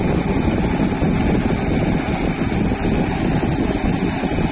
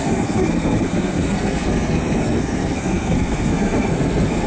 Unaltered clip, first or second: first